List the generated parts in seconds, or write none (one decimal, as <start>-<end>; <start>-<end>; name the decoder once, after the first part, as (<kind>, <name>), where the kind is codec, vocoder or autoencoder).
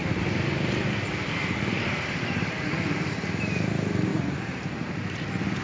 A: 0.0-3.2 (vocoder, BigVGAN v2); 4.1-4.6